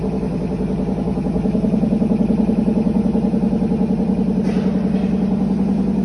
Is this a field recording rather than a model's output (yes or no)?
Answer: yes